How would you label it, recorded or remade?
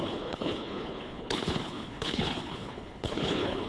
remade